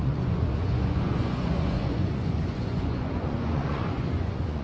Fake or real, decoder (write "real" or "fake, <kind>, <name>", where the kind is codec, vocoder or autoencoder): fake, vocoder, Vocos